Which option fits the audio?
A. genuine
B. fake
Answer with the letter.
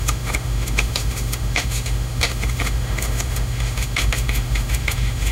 B